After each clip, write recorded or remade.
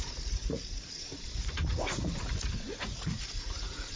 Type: remade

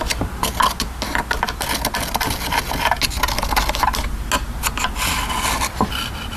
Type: recorded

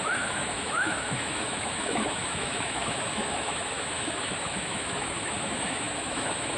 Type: remade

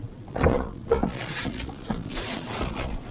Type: remade